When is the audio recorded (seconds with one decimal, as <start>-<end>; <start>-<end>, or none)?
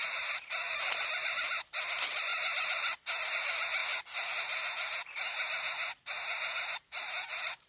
2.3-3.1; 3.8-6.7